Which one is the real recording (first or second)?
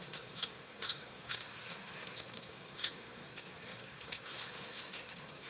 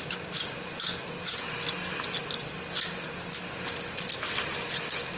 second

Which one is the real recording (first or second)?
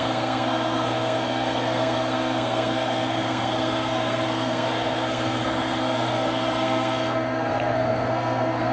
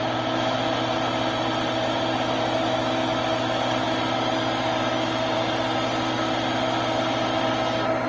second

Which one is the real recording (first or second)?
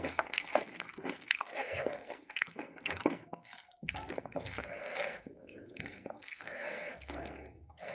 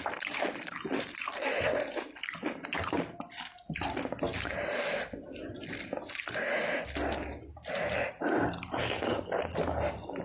second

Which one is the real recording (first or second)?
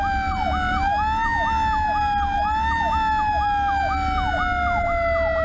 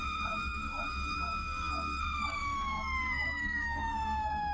first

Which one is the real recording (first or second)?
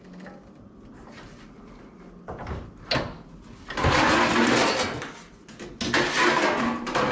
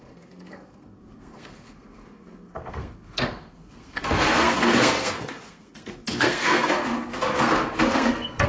first